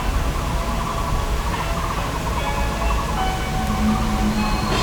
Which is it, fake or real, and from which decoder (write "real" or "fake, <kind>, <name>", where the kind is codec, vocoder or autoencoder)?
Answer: real